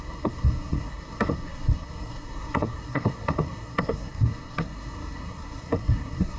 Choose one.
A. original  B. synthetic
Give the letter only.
B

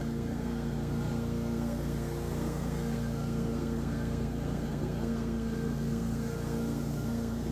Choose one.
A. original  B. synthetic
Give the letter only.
B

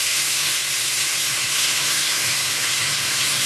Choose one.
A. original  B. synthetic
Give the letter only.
B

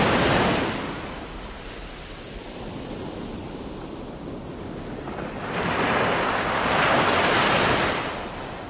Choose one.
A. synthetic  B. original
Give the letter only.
B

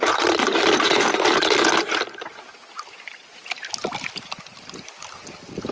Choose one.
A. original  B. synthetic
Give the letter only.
A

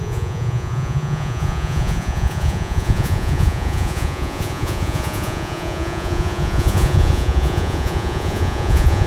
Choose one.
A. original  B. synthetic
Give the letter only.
B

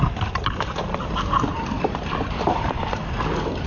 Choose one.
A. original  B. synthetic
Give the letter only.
A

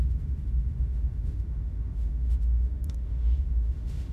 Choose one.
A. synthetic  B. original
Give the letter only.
A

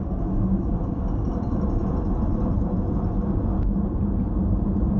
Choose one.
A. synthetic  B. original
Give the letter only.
B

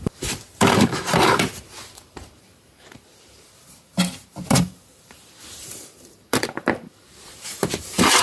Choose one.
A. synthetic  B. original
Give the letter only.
A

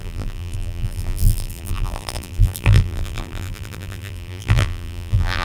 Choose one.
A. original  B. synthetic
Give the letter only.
B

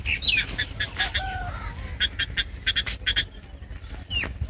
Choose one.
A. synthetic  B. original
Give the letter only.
B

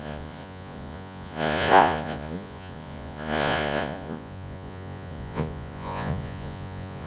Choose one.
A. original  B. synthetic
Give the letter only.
B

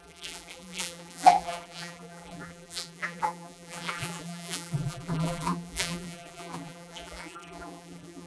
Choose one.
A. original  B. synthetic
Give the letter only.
B